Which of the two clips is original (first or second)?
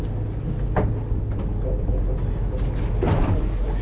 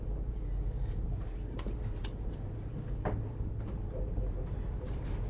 first